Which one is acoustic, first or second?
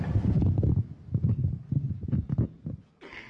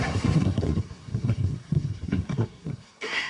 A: first